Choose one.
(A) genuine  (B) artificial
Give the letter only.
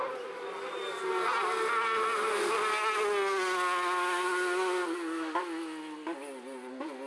A